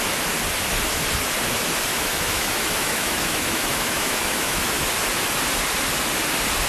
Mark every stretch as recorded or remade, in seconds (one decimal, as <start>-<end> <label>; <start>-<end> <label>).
0.0-1.9 recorded; 1.9-4.8 remade; 4.8-6.7 recorded